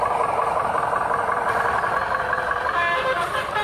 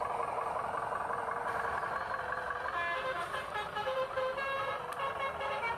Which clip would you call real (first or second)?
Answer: second